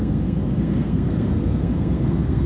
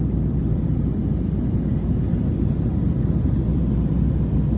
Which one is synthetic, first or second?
first